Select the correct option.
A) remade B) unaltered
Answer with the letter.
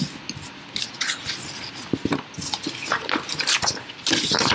B